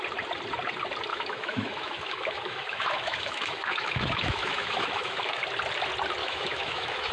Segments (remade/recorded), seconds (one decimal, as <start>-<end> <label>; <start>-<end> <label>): 0.0-1.1 recorded; 1.1-5.4 remade; 5.4-6.2 recorded; 6.2-7.1 remade